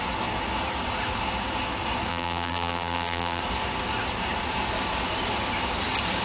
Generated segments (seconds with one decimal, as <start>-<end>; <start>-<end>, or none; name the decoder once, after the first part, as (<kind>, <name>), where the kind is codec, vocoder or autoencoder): 2.1-3.4 (vocoder, BigVGAN v2)